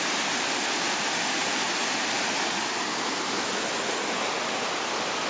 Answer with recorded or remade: recorded